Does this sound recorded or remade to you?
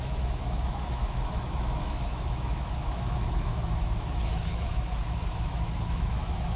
remade